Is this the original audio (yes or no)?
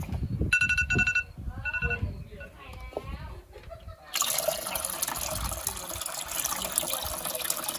yes